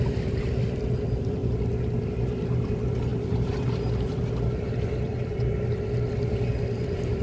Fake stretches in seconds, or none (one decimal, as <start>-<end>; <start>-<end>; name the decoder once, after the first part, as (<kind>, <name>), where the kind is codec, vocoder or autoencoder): none